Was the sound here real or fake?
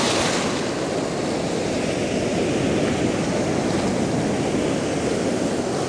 real